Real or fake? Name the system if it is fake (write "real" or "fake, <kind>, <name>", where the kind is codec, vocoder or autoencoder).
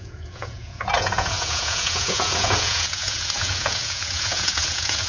fake, vocoder, Vocos